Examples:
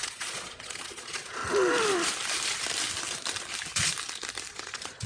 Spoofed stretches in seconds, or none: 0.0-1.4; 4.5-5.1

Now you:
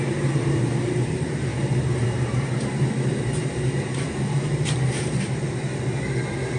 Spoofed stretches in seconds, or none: 0.0-6.6

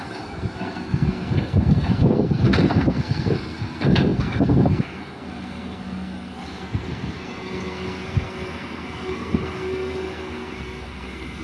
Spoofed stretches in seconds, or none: 0.0-11.4